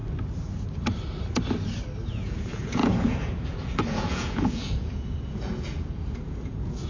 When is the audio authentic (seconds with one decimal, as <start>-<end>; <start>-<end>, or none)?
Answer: 0.0-2.1